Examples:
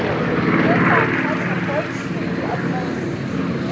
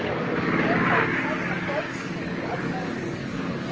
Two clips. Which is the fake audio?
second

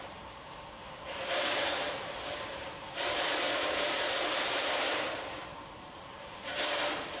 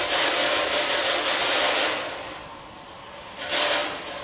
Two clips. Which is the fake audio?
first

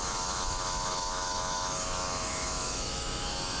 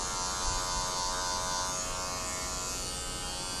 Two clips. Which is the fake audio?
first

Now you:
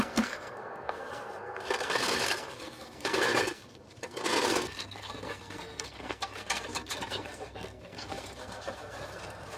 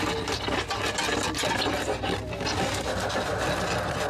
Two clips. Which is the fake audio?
first